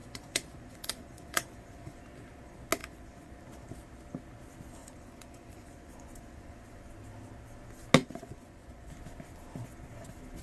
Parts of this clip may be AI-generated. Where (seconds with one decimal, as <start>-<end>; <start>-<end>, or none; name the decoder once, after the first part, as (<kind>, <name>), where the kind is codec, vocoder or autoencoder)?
0.0-2.0 (vocoder, Vocos); 2.8-3.3; 4.8-6.8; 8.0-8.9

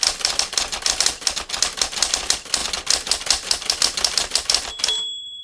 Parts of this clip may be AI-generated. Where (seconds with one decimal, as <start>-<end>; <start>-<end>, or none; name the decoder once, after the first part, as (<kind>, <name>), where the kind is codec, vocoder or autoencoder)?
none

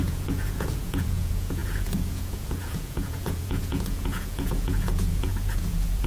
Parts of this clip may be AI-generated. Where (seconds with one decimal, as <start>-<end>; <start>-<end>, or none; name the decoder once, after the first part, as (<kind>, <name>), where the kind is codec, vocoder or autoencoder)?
0.0-6.1 (vocoder, Vocos)

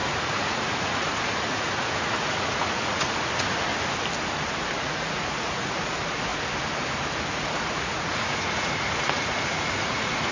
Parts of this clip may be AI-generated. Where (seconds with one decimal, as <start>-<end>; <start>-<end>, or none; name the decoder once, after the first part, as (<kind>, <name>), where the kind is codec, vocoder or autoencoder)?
0.0-3.7 (vocoder, Vocos); 4.8-6.3; 7.3-10.3

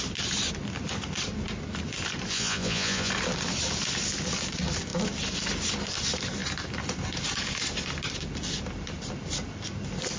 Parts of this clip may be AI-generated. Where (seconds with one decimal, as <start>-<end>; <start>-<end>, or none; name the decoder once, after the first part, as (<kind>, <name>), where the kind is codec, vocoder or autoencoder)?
2.3-3.1 (vocoder, Vocos)

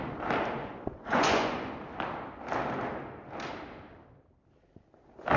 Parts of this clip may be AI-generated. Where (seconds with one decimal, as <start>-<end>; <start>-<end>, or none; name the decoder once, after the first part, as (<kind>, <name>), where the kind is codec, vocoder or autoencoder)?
0.6-1.7 (vocoder, Vocos)